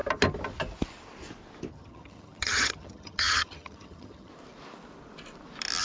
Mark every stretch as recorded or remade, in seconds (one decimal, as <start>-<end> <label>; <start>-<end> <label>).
0.0-1.7 recorded; 1.7-4.3 remade; 4.3-5.8 recorded